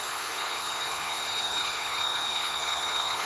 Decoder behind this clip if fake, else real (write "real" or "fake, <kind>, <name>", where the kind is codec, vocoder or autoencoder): fake, codec, HILCodec